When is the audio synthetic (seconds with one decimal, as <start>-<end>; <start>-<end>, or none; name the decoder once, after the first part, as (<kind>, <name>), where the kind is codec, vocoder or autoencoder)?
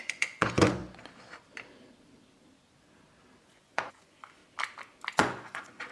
0.0-0.8 (vocoder, Vocos); 3.4-4.4; 5.1-5.9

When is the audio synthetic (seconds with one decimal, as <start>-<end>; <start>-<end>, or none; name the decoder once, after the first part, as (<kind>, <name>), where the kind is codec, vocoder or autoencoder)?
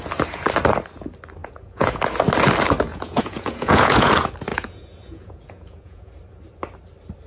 1.4-2.0 (vocoder, Vocos); 2.9-4.1; 4.5-6.1